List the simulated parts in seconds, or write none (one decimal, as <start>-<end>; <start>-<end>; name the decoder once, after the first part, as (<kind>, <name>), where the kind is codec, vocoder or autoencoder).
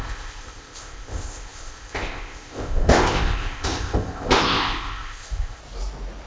0.0-5.6 (codec, ZipCodec)